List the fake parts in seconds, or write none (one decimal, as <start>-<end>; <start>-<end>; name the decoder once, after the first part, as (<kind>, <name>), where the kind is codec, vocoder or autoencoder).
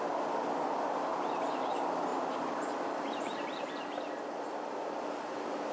2.1-3.6 (vocoder, BigVGAN v2)